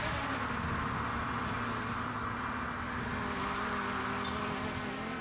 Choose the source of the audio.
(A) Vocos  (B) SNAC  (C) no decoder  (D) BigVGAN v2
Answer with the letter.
C